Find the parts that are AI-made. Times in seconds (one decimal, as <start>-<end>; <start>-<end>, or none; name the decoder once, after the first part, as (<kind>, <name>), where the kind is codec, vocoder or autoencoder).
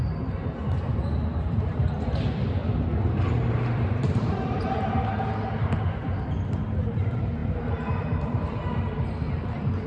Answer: 0.8-2.6 (vocoder, BigVGAN v2); 3.5-6.0; 6.9-9.9